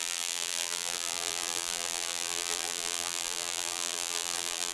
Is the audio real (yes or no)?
no